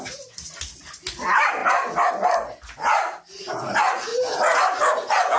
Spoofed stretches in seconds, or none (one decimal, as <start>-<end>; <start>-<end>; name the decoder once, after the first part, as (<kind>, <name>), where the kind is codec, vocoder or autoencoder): none